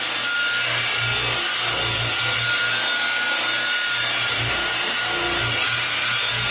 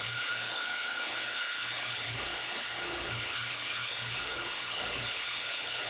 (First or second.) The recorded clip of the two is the first